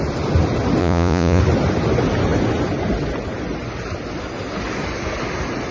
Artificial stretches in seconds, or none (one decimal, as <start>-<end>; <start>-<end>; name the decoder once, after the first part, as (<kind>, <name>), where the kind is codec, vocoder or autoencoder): 0.8-1.4 (vocoder, Vocos)